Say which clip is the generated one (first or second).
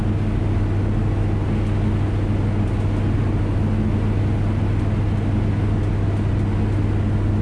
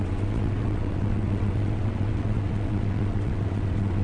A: second